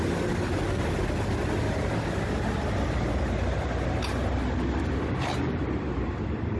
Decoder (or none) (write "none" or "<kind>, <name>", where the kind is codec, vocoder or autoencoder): none